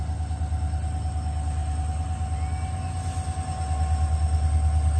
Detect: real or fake real